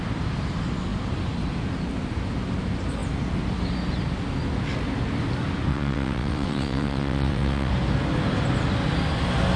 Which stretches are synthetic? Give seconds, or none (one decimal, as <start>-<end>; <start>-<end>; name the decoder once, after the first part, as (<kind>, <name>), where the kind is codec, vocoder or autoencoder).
5.7-7.7 (vocoder, WaveNeXt)

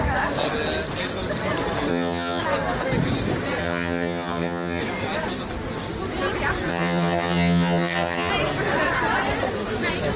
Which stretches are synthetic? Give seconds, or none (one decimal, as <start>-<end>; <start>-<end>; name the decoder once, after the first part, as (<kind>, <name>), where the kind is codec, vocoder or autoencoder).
1.9-2.4 (vocoder, HiFi-GAN); 3.6-4.8; 6.7-8.3

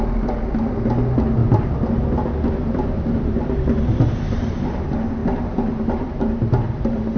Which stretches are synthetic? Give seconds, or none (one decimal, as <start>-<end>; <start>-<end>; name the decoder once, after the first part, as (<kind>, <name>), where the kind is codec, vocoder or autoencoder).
1.4-4.8 (vocoder, BigVGAN v2); 5.2-7.2

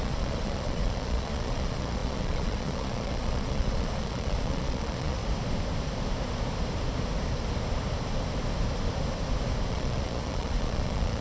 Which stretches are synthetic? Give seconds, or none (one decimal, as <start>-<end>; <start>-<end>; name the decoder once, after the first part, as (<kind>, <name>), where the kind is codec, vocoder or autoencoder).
0.0-5.2 (vocoder, Vocos); 9.7-11.2